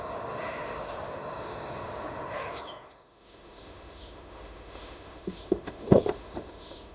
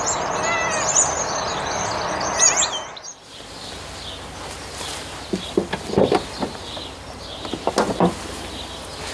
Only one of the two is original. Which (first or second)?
second